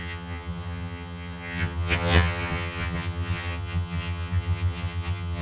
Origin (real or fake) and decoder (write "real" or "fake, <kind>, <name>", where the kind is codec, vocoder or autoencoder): fake, vocoder, HiFi-GAN